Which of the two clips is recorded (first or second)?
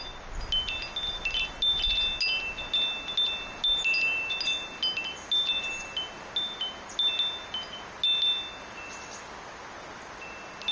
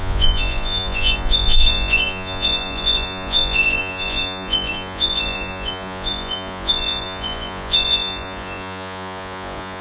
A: first